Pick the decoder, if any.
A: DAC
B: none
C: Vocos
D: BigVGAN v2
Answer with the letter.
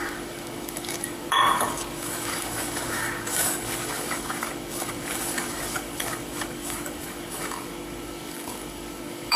A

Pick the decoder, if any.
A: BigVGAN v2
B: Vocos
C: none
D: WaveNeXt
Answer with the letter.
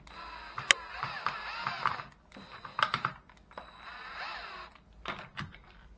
C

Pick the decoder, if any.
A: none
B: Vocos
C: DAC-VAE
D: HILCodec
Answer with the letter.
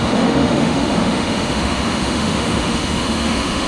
C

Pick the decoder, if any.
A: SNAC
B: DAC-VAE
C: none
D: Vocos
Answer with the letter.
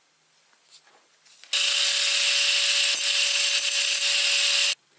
C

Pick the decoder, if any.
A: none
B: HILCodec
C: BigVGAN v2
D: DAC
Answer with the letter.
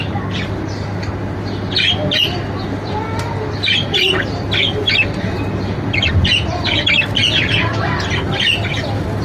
A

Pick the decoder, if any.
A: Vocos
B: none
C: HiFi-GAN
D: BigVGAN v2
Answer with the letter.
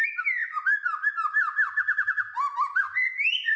B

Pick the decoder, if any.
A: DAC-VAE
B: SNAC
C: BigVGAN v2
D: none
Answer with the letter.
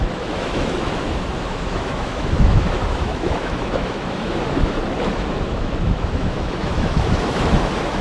A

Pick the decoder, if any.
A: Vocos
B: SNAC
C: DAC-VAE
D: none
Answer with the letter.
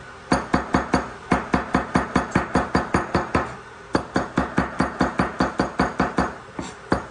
D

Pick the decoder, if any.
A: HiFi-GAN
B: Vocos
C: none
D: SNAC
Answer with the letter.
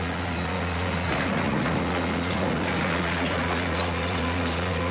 B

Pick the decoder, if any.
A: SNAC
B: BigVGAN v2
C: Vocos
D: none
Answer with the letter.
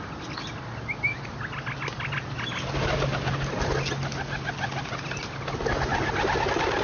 D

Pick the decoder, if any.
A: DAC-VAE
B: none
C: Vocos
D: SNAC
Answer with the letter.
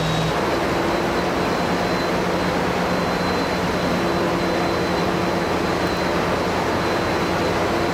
B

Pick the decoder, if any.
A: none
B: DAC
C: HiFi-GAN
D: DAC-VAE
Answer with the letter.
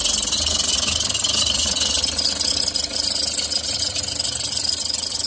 A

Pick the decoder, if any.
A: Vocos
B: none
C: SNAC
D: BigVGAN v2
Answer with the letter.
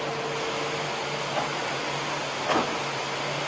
B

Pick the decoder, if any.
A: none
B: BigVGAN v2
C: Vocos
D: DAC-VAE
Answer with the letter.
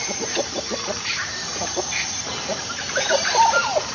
B